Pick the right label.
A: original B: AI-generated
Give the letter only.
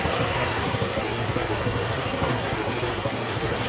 B